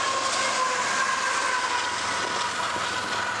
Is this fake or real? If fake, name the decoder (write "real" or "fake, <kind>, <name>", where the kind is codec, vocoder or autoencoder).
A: real